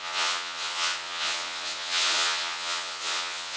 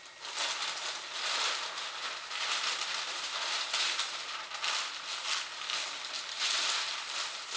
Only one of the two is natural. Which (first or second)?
second